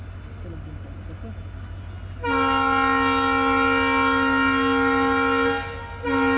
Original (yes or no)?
yes